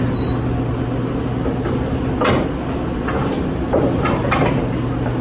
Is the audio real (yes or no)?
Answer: yes